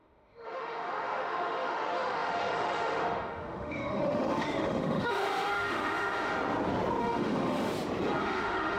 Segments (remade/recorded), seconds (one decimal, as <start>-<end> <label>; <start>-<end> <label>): 0.0-6.3 remade; 6.3-7.0 recorded; 7.0-7.7 remade; 7.7-8.2 recorded; 8.2-8.8 remade